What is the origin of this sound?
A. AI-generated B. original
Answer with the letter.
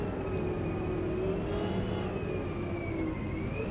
B